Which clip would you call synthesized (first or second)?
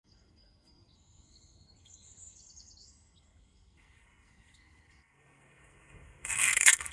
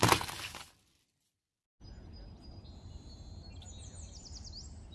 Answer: first